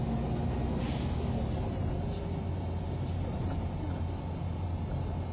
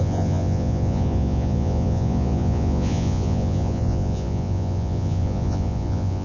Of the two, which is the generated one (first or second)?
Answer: second